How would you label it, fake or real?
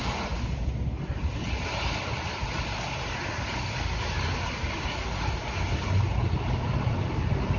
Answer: real